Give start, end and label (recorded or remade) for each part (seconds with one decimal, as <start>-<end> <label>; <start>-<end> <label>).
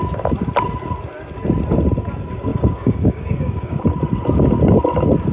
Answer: 0.0-2.5 recorded; 2.5-3.8 remade; 3.8-5.3 recorded